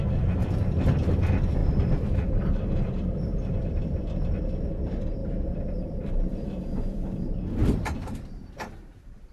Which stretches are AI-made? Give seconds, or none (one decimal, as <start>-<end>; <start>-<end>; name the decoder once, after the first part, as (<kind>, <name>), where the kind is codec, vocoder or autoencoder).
0.4-0.9 (vocoder, BigVGAN v2); 1.6-4.7; 5.2-6.1